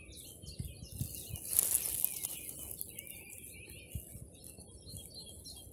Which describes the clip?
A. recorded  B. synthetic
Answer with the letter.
A